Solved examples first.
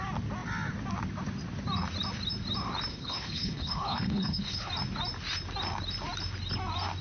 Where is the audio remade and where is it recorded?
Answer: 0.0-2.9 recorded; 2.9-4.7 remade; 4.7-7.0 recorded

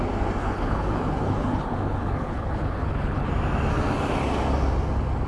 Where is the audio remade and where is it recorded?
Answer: 0.0-0.4 recorded; 0.4-3.3 remade; 3.3-5.3 recorded

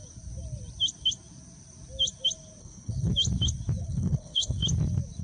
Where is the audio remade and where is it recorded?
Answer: 0.0-2.6 recorded; 2.6-3.1 remade; 3.1-3.8 recorded; 3.8-4.6 remade; 4.6-5.2 recorded